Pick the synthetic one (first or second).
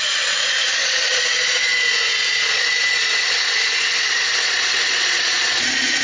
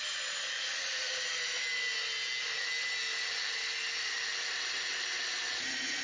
first